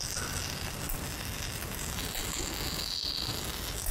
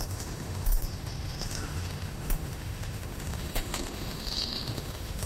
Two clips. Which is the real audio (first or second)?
first